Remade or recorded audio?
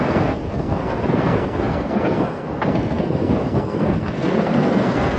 remade